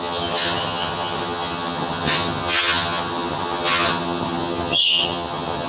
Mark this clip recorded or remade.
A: remade